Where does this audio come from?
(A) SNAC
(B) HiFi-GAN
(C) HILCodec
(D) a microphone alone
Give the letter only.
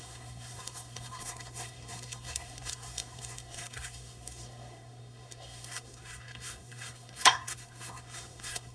A